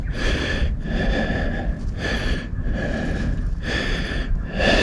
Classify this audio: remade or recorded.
recorded